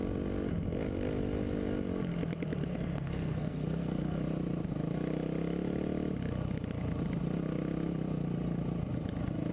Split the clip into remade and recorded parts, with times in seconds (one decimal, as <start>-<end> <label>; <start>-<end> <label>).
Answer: 0.0-2.7 recorded; 2.7-4.2 remade; 4.2-9.5 recorded